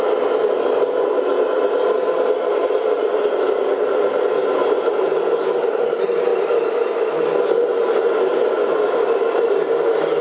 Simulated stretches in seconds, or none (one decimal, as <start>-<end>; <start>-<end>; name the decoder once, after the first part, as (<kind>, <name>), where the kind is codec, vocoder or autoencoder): none